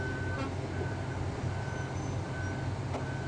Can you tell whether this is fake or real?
real